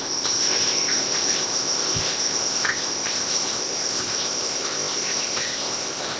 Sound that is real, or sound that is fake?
fake